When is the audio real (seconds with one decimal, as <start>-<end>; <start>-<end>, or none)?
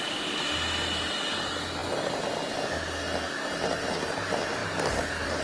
0.0-5.4